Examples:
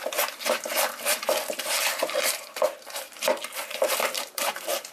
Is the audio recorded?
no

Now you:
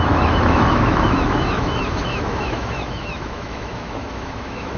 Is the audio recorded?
no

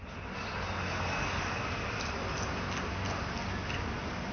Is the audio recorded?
yes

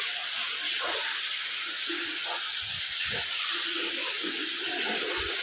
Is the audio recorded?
yes